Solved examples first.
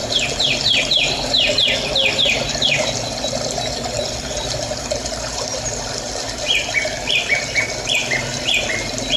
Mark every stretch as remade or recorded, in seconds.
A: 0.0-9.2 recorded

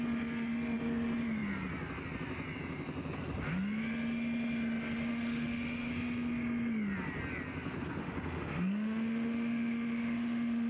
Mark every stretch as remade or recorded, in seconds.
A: 0.0-5.1 recorded; 5.1-5.9 remade; 5.9-8.0 recorded; 8.0-10.7 remade

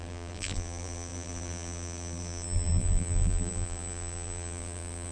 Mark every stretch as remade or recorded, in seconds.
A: 0.0-5.1 remade

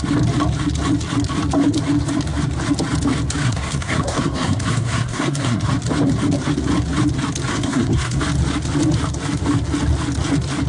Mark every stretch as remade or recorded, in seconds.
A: 0.0-3.4 recorded; 3.4-5.7 remade; 5.7-7.5 recorded; 7.5-8.2 remade; 8.2-10.7 recorded

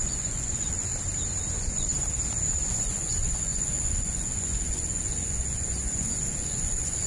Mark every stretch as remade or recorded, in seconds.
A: 0.0-0.9 remade; 0.9-1.5 recorded; 1.5-1.9 remade; 1.9-2.7 recorded; 2.7-7.1 remade

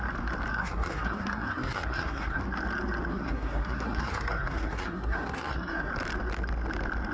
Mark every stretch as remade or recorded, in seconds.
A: 0.0-0.5 recorded; 0.5-2.4 remade; 2.4-3.1 recorded; 3.1-5.9 remade; 5.9-7.1 recorded

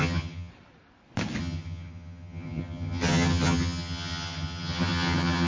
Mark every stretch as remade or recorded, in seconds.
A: 0.0-0.5 remade; 0.5-1.4 recorded; 1.4-5.5 remade

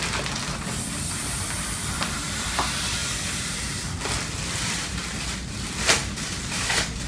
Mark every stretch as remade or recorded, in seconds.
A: 0.0-3.0 remade; 3.0-4.1 recorded; 4.1-6.0 remade; 6.0-7.1 recorded